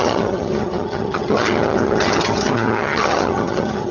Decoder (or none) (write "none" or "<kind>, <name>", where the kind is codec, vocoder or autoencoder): vocoder, HiFi-GAN